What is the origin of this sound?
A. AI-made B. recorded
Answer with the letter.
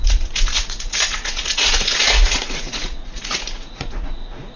A